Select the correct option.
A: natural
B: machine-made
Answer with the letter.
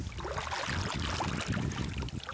A